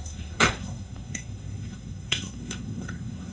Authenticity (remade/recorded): remade